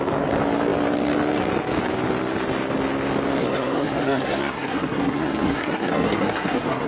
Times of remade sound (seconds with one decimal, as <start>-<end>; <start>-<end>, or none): 3.4-6.9